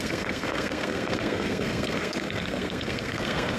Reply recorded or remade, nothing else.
remade